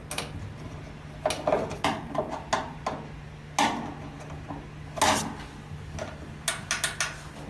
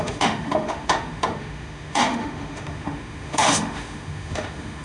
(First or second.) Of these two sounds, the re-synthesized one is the second